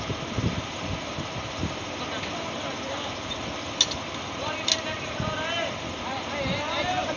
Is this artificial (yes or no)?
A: no